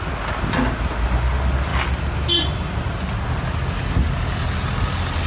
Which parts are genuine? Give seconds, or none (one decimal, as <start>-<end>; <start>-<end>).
0.0-5.3